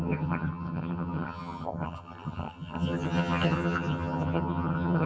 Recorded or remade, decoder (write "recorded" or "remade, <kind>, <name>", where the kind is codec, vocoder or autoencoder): remade, vocoder, HiFi-GAN